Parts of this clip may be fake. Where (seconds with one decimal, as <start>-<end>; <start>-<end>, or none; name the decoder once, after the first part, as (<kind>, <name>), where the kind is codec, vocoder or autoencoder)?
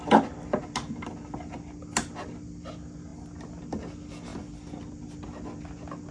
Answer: none